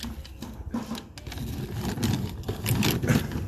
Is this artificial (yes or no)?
no